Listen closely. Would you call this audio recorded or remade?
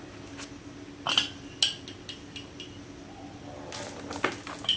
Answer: recorded